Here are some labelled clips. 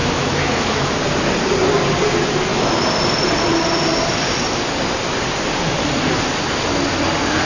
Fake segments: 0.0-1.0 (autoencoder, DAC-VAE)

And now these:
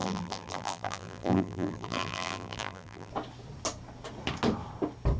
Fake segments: 0.0-3.1 (vocoder, BigVGAN v2)